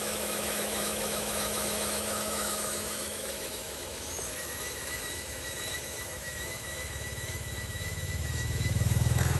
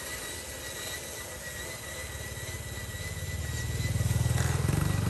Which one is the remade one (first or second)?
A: first